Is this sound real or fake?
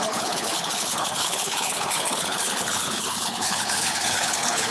fake